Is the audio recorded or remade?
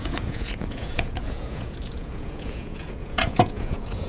remade